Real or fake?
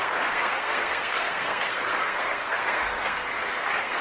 fake